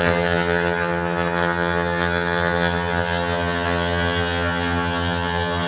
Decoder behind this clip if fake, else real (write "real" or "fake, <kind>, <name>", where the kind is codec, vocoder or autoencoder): fake, vocoder, HiFi-GAN